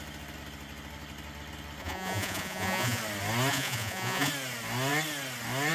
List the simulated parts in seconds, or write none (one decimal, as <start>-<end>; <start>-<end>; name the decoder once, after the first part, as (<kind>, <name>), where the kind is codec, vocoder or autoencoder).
1.8-3.0 (vocoder, Vocos); 3.5-4.3